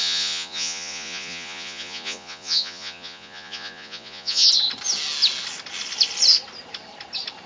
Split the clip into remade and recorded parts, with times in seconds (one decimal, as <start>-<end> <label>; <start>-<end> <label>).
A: 0.0-4.5 remade; 4.5-7.5 recorded

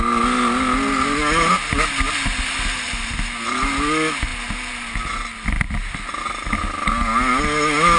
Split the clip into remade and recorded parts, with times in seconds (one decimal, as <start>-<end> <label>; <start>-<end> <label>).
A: 0.0-8.0 recorded

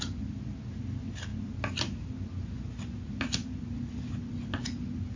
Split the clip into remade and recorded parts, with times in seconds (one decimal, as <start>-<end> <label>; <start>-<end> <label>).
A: 0.0-5.2 recorded

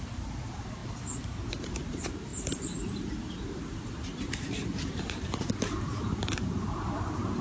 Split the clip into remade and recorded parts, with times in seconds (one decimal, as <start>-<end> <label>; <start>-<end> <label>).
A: 0.0-0.8 remade; 0.8-1.5 recorded; 1.5-7.4 remade

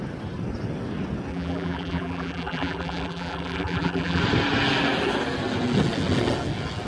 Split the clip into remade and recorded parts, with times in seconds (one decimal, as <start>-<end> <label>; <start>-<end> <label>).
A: 0.0-1.3 recorded; 1.3-4.2 remade; 4.2-6.9 recorded

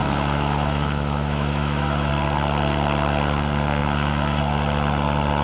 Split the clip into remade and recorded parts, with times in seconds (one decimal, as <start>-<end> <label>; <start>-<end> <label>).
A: 0.0-2.1 remade; 2.1-5.4 recorded

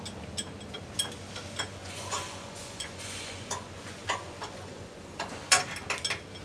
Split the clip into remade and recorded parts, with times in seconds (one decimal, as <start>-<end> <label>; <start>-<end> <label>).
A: 0.0-1.8 recorded; 1.8-5.6 remade; 5.6-6.4 recorded

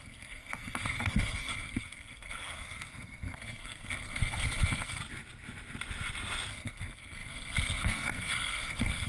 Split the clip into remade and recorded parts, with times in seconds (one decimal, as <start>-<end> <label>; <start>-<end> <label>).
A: 0.0-5.0 remade; 5.0-6.5 recorded; 6.5-9.1 remade